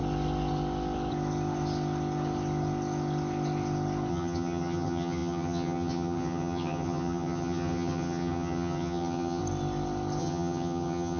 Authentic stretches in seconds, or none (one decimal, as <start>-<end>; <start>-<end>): 0.0-4.1; 9.4-10.2